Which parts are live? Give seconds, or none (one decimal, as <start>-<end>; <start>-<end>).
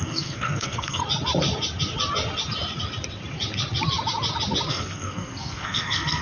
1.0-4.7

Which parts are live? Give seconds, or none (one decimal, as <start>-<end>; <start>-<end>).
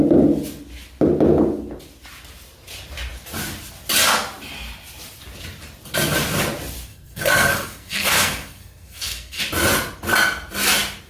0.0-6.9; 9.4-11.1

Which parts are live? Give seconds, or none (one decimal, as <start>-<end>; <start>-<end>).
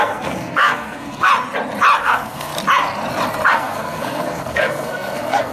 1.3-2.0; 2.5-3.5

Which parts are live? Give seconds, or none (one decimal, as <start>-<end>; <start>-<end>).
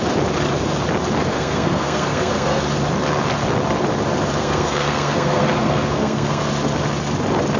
0.0-1.2; 2.6-4.4; 6.5-7.6